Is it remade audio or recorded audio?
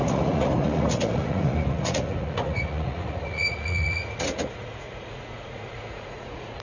remade